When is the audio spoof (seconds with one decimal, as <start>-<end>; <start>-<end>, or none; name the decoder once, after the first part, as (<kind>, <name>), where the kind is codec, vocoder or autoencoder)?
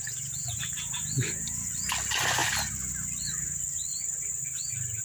none